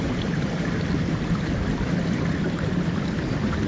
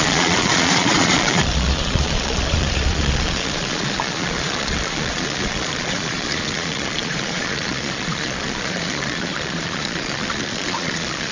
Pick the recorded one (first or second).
first